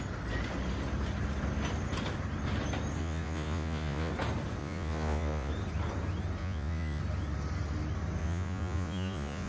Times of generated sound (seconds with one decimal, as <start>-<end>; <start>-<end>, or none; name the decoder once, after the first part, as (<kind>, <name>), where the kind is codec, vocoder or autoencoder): 3.0-4.1 (vocoder, Vocos); 4.6-5.5; 6.4-7.0; 8.2-9.5